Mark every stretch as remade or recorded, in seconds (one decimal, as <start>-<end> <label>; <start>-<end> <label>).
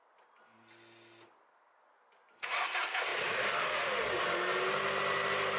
0.0-5.6 recorded